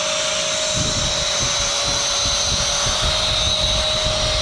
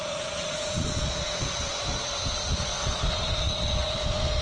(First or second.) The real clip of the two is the first